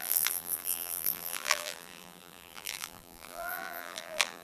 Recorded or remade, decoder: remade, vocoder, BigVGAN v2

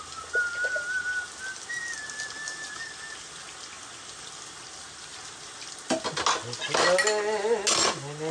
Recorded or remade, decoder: recorded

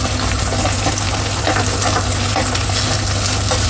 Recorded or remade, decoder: recorded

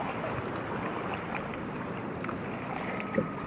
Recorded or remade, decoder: remade, vocoder, BigVGAN v2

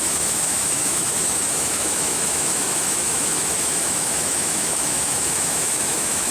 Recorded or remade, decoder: remade, autoencoder, DAC-VAE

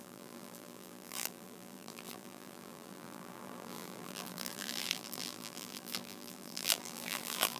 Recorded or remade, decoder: remade, vocoder, BigVGAN v2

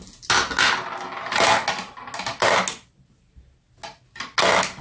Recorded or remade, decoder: recorded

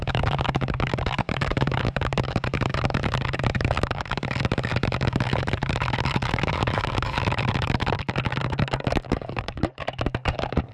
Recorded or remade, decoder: remade, codec, DAC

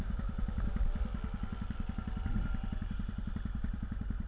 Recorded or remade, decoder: remade, vocoder, BigVGAN v2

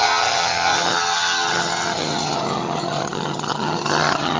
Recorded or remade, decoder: remade, vocoder, HiFi-GAN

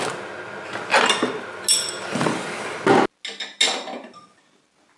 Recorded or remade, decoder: recorded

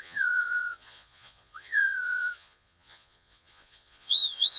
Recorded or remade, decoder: remade, vocoder, Vocos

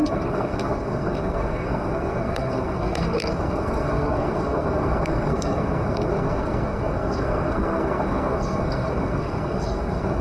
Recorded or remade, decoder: remade, codec, SNAC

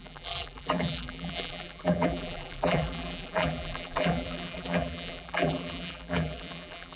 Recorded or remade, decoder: remade, vocoder, BigVGAN v2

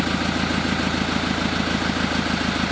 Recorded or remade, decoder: recorded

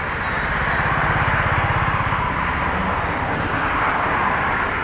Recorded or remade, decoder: recorded